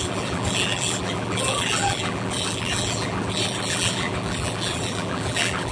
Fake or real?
fake